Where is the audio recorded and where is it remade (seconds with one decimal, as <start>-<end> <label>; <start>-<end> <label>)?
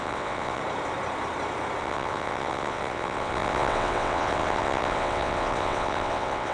0.0-0.6 remade; 0.6-1.8 recorded; 1.8-6.5 remade